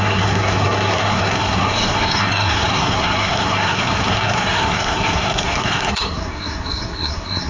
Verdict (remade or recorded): remade